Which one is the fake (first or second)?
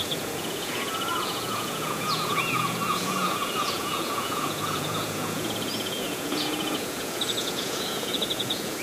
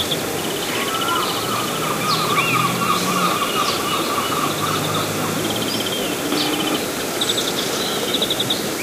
first